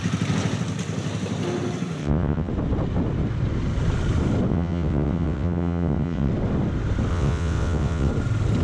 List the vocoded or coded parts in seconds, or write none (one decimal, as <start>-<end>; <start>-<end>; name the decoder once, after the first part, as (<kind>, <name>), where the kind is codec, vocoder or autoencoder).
2.0-2.5 (vocoder, WaveNeXt); 4.5-6.3; 7.1-8.1